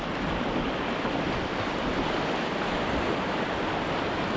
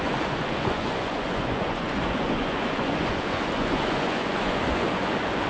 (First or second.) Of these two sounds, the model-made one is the second